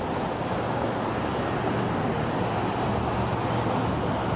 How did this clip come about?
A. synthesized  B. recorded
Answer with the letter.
B